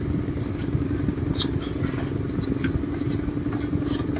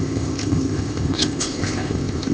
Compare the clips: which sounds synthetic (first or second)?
second